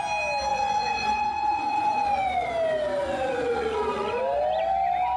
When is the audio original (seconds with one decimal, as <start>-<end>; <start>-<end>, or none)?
0.0-0.5; 2.5-3.0; 4.2-5.2